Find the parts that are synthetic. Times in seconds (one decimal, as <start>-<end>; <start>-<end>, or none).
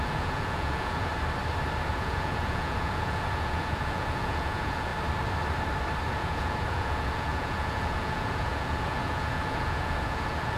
0.0-1.1; 1.9-4.9; 6.1-10.6